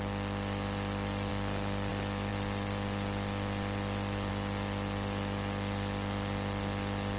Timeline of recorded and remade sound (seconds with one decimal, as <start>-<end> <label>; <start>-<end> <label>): 0.0-7.2 recorded